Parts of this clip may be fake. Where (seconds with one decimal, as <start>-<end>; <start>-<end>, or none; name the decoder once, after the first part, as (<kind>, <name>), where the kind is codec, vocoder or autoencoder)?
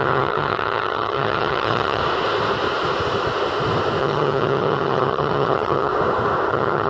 0.0-2.0 (vocoder, HiFi-GAN); 4.0-5.9; 6.5-6.9